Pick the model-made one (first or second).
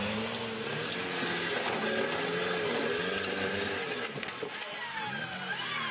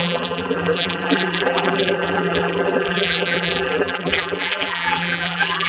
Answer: second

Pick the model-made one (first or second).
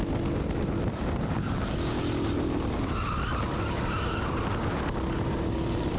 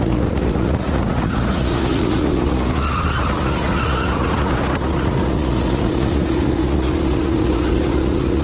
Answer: second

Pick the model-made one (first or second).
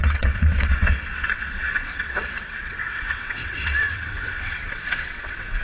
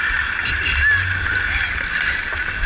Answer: first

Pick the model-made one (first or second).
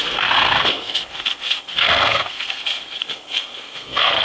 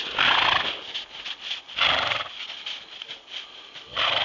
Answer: first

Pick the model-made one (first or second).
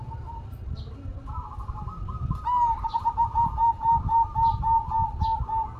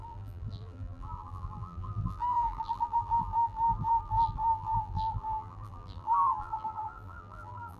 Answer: second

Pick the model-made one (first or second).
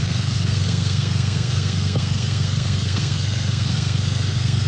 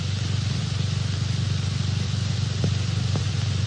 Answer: first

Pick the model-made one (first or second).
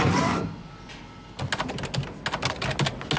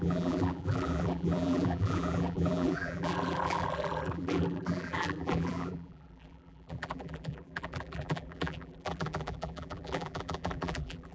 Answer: second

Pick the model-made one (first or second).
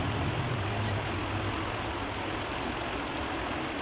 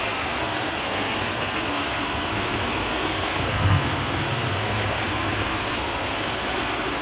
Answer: second